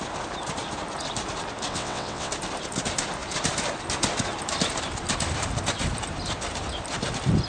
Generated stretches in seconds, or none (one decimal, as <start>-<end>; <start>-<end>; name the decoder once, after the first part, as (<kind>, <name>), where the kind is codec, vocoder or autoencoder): 1.7-2.3 (vocoder, WaveNeXt)